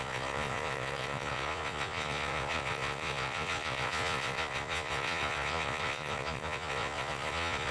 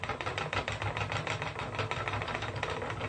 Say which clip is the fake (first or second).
first